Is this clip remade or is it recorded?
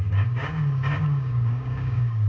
remade